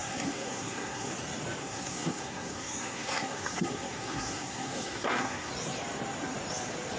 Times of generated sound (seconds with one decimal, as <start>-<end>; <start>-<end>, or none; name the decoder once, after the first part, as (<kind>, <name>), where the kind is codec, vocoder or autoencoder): 0.0-1.1 (codec, SNAC); 1.6-5.5

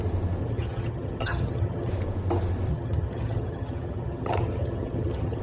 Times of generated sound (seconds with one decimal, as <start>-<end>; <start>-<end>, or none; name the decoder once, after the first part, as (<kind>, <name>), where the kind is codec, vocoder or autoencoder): 0.4-1.9 (vocoder, HiFi-GAN); 2.7-5.4

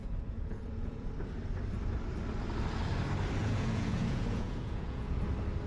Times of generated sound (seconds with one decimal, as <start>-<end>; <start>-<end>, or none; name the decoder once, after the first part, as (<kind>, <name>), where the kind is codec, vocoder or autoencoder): 0.0-1.1 (vocoder, Vocos); 3.4-5.2

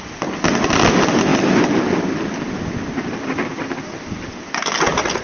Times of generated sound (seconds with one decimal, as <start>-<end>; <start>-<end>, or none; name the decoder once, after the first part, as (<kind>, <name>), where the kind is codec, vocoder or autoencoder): none

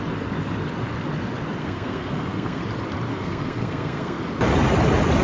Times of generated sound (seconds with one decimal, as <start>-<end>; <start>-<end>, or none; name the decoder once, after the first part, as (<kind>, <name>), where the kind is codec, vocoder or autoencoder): 1.6-2.6 (codec, SNAC); 3.1-4.2

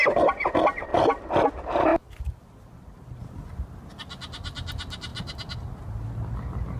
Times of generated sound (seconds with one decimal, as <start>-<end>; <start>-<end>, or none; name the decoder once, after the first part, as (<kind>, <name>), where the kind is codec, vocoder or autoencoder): 1.9-3.2 (vocoder, BigVGAN v2)

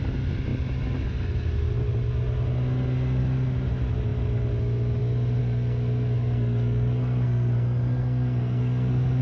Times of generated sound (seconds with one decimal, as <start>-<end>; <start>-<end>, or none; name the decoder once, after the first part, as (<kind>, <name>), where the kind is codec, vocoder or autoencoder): 5.4-9.2 (codec, SNAC)